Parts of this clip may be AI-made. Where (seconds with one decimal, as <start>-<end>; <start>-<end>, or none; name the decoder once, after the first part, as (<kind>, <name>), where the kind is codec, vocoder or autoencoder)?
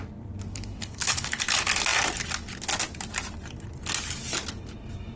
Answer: 0.5-1.4 (codec, HILCodec)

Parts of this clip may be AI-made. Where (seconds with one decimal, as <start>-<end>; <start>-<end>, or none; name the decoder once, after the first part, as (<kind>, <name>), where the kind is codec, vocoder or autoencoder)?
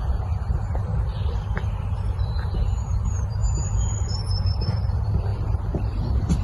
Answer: 0.0-0.9 (vocoder, BigVGAN v2); 1.8-3.4; 3.9-6.4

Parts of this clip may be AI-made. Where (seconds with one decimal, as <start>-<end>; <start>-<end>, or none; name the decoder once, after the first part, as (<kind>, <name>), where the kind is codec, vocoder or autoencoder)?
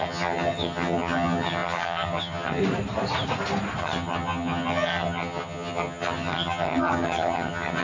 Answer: 0.0-2.6 (vocoder, HiFi-GAN); 3.8-7.8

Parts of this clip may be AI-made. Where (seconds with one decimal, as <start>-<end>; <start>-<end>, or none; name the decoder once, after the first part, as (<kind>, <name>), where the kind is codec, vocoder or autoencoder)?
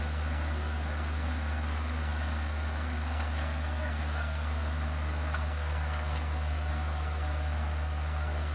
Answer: 0.0-8.5 (codec, SNAC)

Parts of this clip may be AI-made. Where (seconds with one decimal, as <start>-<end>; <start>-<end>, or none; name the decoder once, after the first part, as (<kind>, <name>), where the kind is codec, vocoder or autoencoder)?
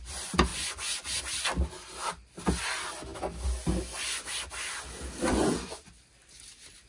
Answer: 0.5-1.2 (vocoder, Vocos); 5.3-5.9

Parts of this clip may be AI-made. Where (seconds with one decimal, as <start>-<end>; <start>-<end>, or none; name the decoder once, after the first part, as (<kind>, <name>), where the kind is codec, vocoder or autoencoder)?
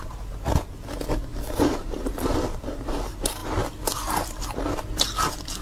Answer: 1.3-3.0 (vocoder, BigVGAN v2)